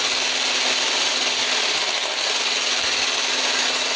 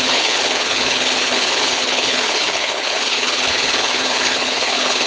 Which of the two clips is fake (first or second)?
second